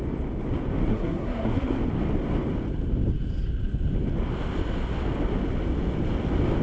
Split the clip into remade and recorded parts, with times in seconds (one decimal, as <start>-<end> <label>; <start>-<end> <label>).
0.0-0.9 recorded; 0.9-1.8 remade; 1.8-6.6 recorded